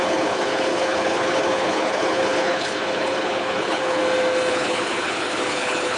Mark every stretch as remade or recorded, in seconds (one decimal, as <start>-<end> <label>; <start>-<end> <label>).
0.0-4.0 remade; 4.0-4.5 recorded; 4.5-6.0 remade